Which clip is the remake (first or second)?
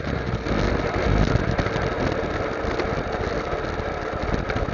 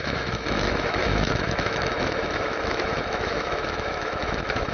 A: second